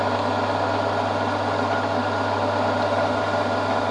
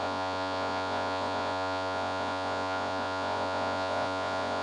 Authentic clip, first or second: first